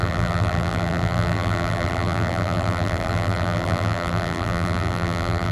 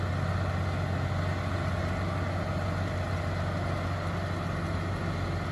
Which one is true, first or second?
second